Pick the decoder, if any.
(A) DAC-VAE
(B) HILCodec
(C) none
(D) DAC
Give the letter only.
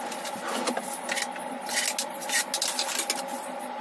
C